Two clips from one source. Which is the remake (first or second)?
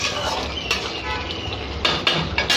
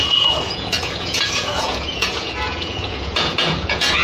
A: second